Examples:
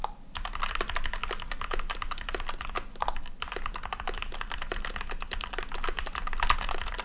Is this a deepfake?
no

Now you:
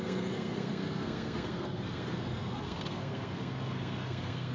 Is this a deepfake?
yes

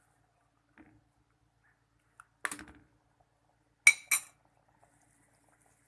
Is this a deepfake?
no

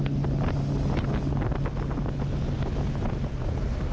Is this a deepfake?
no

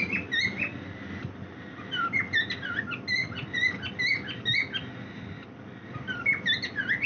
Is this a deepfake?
no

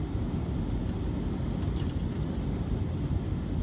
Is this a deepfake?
no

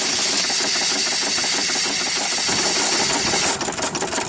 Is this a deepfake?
no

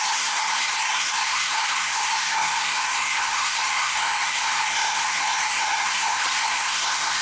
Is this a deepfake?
yes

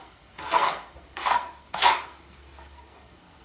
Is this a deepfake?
yes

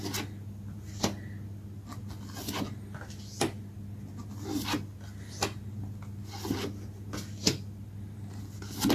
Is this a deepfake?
no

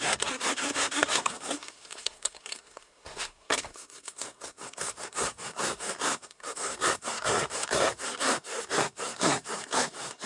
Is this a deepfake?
yes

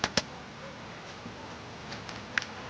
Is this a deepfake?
no